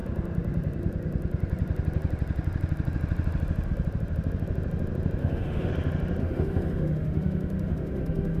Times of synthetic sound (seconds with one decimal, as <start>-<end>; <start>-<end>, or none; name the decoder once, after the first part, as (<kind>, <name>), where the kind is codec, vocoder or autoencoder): 5.2-5.7 (autoencoder, DAC-VAE); 6.2-8.4